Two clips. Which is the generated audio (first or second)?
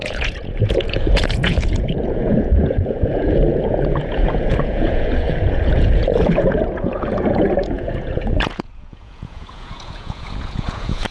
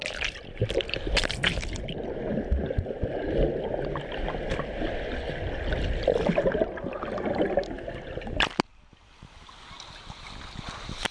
first